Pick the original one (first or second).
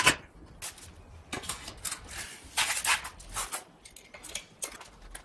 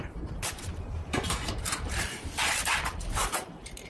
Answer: first